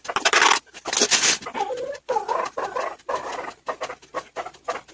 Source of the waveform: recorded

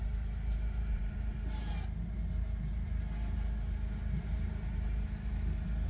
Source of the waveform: recorded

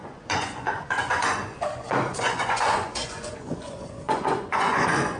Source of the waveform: remade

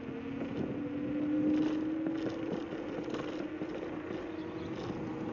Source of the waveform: recorded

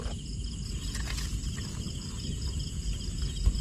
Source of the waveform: recorded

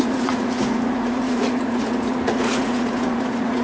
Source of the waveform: remade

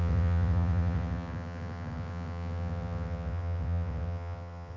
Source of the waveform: remade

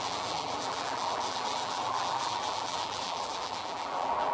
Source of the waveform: remade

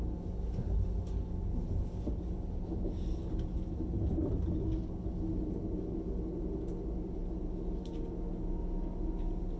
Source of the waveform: recorded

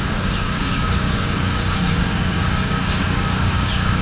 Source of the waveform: remade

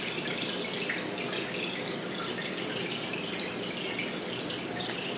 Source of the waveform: recorded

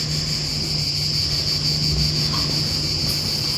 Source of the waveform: recorded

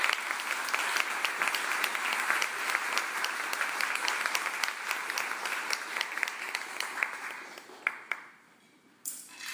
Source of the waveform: recorded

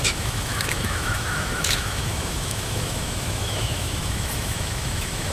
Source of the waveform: remade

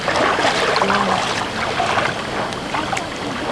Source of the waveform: recorded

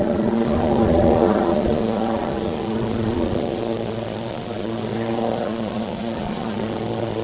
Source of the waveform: remade